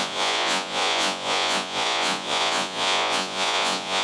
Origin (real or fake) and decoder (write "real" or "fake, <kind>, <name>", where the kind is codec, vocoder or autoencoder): fake, vocoder, Vocos